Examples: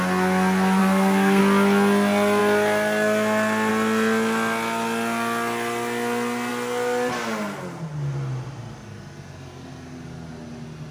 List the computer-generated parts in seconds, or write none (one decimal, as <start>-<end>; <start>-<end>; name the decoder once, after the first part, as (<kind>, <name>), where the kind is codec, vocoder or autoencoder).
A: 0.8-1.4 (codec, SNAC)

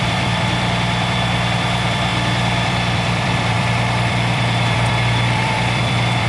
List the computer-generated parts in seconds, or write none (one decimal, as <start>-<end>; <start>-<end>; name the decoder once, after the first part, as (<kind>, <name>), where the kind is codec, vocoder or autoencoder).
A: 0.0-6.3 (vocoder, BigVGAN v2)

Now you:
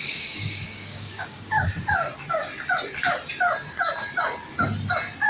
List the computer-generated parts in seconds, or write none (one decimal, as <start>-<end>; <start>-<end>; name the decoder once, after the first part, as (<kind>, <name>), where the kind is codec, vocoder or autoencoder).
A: 0.0-1.7 (codec, DAC)